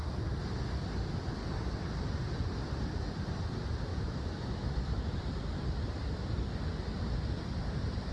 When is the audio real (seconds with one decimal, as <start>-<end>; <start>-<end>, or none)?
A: 0.0-3.9; 5.2-8.1